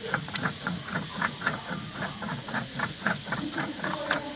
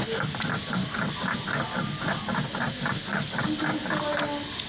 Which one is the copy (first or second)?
first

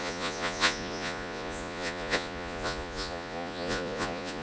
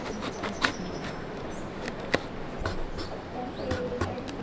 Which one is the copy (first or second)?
first